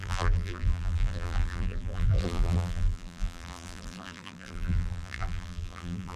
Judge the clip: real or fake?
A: fake